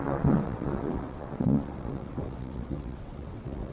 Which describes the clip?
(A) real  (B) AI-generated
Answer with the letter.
B